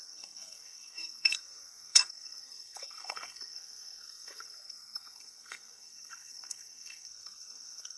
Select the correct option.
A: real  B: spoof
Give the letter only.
B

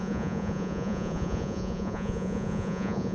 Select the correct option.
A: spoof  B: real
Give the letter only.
A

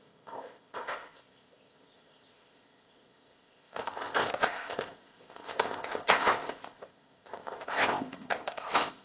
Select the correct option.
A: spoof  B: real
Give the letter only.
A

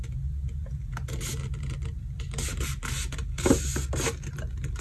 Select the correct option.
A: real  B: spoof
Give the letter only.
A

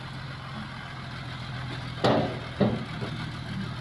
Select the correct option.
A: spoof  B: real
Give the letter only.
B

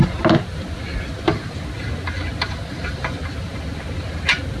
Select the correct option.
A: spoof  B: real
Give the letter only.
B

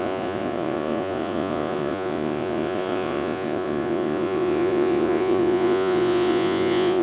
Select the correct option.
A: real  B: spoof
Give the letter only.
B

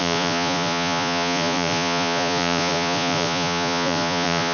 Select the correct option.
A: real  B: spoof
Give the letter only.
B